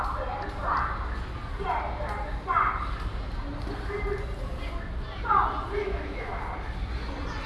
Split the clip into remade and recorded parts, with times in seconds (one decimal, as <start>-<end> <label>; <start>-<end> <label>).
0.0-5.8 recorded; 5.8-6.4 remade; 6.4-7.5 recorded